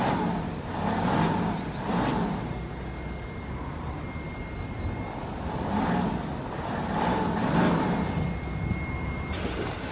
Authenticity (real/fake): real